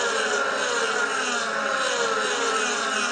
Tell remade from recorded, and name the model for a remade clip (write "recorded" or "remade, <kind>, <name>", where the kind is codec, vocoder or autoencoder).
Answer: recorded